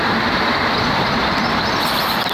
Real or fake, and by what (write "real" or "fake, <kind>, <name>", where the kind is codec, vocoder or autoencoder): fake, vocoder, BigVGAN v2